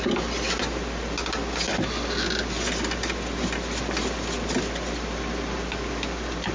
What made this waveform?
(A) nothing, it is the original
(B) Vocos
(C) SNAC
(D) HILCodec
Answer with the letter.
A